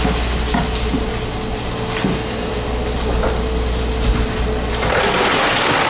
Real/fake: real